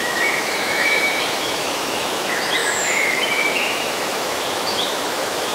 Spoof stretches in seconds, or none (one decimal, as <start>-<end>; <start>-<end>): 0.0-5.5